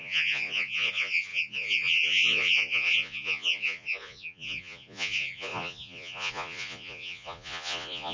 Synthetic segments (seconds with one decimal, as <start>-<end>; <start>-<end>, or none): 0.0-8.1